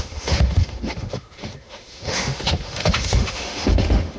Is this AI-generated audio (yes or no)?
yes